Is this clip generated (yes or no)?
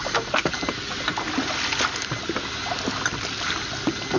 no